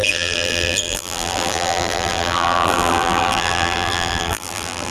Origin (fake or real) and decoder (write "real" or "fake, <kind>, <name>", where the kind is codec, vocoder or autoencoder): fake, vocoder, BigVGAN v2